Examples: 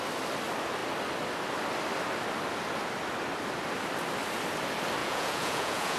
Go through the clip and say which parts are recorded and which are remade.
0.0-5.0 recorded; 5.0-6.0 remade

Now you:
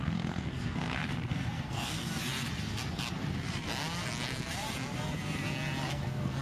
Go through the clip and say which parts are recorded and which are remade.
0.0-2.1 remade; 2.1-5.9 recorded; 5.9-6.4 remade

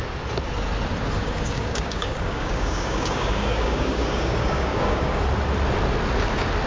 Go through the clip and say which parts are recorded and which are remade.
0.0-1.2 recorded; 1.2-5.2 remade; 5.2-6.7 recorded

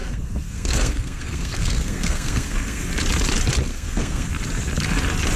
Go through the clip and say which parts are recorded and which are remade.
0.0-2.8 remade; 2.8-3.7 recorded; 3.7-4.3 remade; 4.3-5.4 recorded

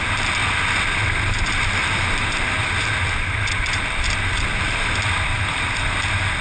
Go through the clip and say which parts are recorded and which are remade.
0.0-1.8 recorded; 1.8-5.6 remade; 5.6-6.4 recorded

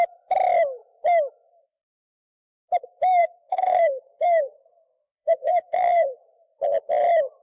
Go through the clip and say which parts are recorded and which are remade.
0.0-3.2 recorded; 3.2-6.2 remade; 6.2-7.4 recorded

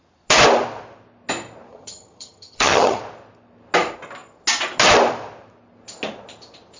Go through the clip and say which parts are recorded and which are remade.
0.0-1.7 recorded; 1.7-3.0 remade; 3.0-6.8 recorded

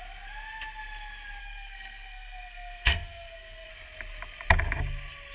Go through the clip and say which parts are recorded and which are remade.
0.0-1.4 recorded; 1.4-3.7 remade; 3.7-5.3 recorded